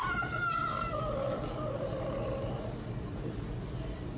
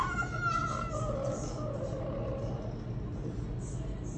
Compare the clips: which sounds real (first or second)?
second